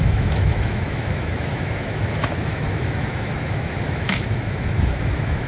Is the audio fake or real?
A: fake